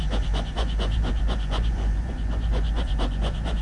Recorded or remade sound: remade